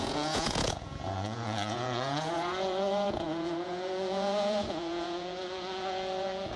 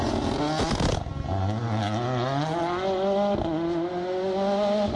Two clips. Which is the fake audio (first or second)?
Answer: first